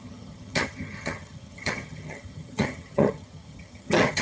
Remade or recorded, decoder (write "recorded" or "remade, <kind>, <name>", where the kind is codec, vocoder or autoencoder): remade, vocoder, HiFi-GAN